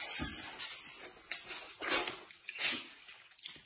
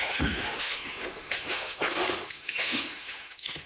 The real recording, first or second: first